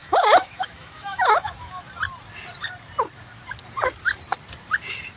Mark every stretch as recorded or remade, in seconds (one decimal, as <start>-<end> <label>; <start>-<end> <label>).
0.0-1.8 remade; 1.8-5.2 recorded